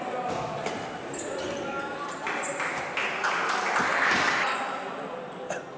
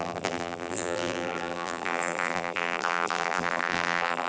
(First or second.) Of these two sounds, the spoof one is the second